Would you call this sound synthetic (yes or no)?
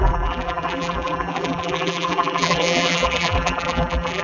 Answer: yes